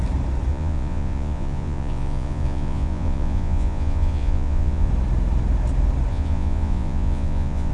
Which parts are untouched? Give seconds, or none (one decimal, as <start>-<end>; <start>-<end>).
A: 0.0-0.5; 4.9-6.1